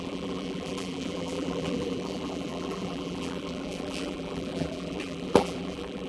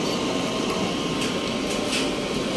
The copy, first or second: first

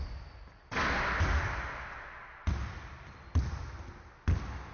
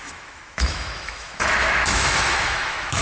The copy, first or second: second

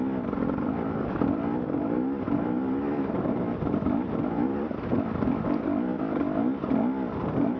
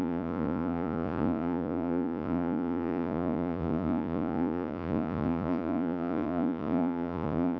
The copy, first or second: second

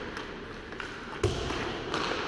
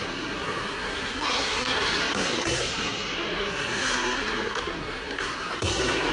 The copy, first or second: second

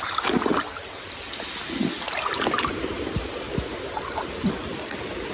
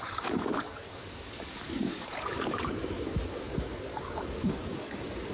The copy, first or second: second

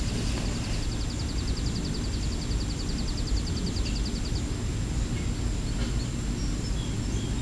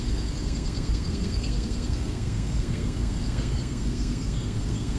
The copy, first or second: second